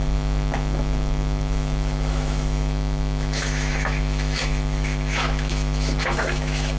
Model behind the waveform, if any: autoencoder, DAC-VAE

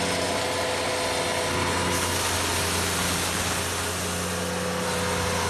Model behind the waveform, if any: none